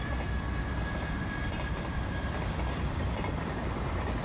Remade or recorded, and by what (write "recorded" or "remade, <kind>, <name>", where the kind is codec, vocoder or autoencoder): recorded